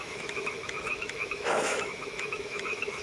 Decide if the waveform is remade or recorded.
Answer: remade